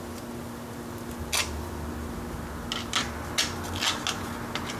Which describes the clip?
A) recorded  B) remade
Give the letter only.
A